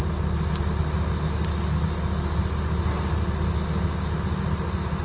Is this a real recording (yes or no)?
yes